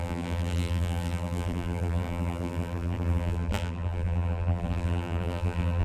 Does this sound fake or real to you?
fake